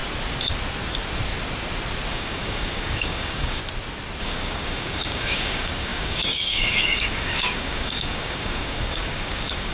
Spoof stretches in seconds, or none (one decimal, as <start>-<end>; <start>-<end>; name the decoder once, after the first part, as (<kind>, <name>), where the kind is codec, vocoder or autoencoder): 2.1-3.6 (codec, DAC); 4.2-9.7